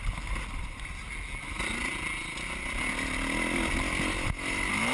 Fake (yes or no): no